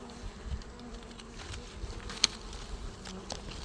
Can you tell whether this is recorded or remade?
recorded